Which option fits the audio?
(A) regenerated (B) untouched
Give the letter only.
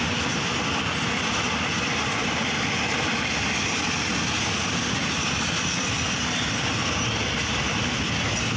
B